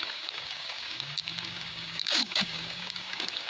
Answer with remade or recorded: remade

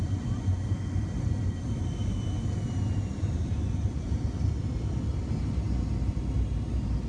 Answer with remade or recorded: recorded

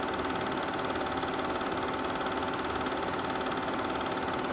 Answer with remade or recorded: recorded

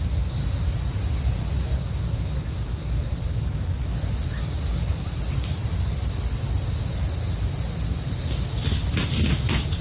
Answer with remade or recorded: recorded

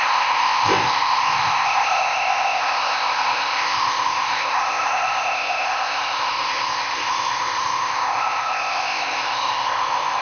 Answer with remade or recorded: remade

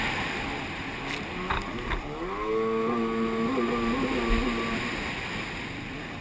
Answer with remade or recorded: recorded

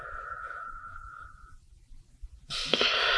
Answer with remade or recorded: recorded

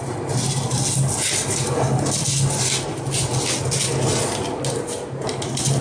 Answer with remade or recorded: recorded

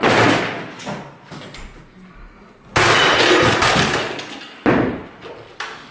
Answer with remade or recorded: recorded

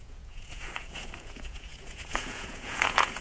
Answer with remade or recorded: remade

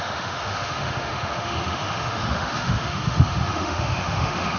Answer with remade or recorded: remade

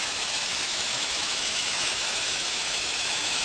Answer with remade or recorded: remade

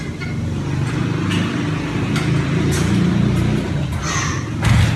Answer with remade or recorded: recorded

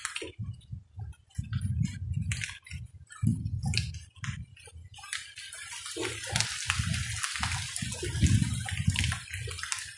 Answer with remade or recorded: recorded